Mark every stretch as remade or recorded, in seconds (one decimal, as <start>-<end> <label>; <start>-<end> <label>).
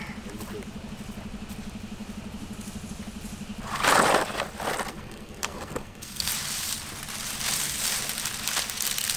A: 0.0-4.9 recorded; 4.9-6.3 remade; 6.3-9.2 recorded